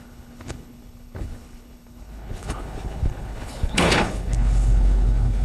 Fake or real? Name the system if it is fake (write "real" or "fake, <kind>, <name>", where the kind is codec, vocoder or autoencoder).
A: fake, codec, HILCodec